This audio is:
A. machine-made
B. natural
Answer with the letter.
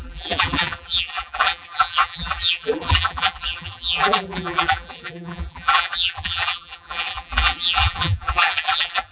A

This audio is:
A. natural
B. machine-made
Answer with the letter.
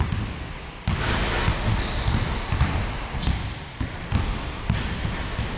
A